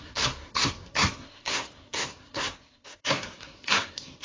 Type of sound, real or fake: fake